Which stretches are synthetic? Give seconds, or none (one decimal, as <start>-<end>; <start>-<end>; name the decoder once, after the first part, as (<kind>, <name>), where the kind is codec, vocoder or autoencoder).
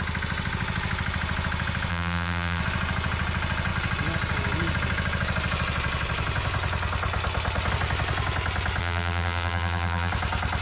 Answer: 1.9-2.6 (vocoder, BigVGAN v2); 8.8-10.1